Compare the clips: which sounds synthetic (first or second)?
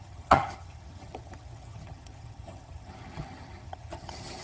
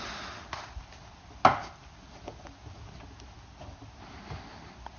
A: first